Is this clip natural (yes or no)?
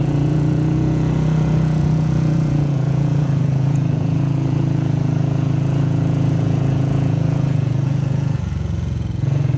no